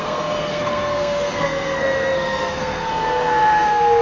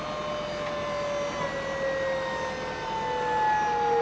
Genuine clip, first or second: second